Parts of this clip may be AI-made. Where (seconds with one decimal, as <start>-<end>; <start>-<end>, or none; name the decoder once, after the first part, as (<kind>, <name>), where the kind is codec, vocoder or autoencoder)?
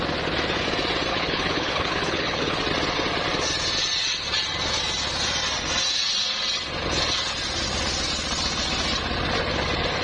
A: 1.1-2.6 (codec, HILCodec)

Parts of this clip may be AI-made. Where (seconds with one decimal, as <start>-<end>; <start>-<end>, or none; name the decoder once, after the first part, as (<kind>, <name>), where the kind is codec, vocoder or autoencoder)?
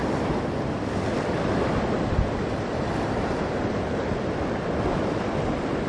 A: none